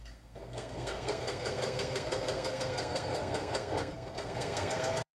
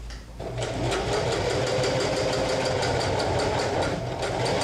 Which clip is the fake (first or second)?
first